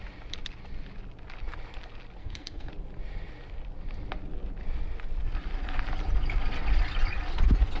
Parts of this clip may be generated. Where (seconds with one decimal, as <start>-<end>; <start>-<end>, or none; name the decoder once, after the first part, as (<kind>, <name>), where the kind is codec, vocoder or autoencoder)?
2.2-2.7 (codec, SNAC)